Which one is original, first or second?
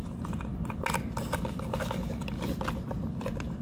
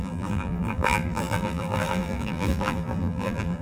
first